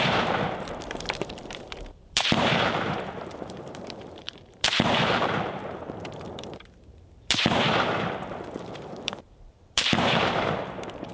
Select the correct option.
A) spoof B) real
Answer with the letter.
A